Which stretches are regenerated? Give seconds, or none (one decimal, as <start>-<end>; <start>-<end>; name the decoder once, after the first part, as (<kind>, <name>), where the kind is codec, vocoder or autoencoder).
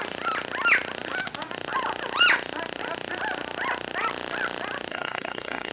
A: 4.9-5.7 (codec, SNAC)